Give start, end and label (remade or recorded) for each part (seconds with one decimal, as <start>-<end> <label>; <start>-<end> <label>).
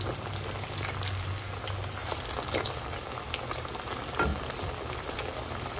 0.0-2.0 recorded; 2.0-2.9 remade; 2.9-4.3 recorded; 4.3-4.9 remade; 4.9-5.8 recorded